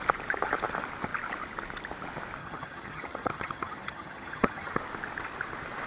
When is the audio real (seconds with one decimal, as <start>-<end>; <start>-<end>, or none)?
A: 0.0-2.4; 4.8-5.9